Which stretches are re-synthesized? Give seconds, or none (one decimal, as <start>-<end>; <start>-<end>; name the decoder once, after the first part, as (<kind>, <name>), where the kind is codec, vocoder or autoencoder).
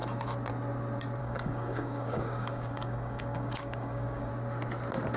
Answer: 1.2-4.3 (codec, DAC)